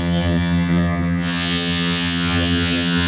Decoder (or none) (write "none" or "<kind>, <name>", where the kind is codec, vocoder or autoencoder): vocoder, HiFi-GAN